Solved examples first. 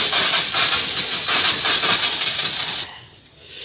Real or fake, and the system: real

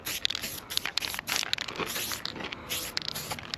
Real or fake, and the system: real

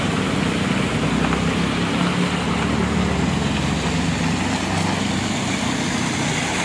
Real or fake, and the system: real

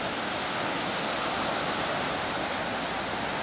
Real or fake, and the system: real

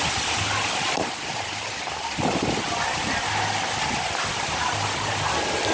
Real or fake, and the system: real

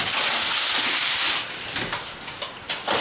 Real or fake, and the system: real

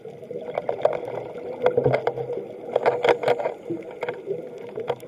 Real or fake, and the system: real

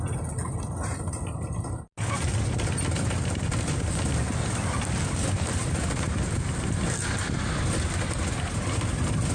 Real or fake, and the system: real